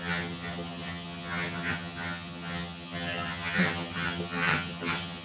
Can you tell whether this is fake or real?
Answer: fake